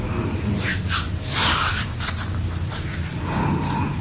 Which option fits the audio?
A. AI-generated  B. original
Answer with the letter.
B